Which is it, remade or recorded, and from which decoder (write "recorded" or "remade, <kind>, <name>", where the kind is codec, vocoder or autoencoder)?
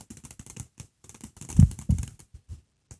recorded